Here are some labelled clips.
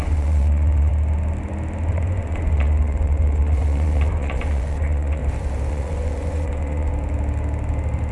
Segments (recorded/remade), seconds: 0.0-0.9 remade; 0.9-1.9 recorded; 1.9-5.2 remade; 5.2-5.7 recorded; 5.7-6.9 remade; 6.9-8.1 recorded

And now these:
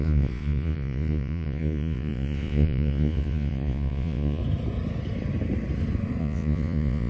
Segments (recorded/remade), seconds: 0.0-4.4 remade; 4.4-6.2 recorded; 6.2-7.1 remade

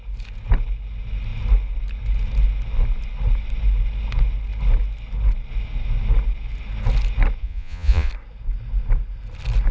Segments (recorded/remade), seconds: 0.0-7.4 recorded; 7.4-8.1 remade; 8.1-9.7 recorded

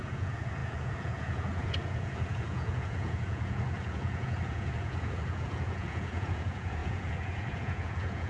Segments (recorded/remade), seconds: 0.0-8.3 remade

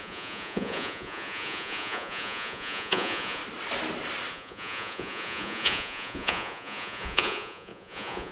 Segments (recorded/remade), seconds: 0.0-3.4 remade; 3.4-4.3 recorded; 4.3-8.3 remade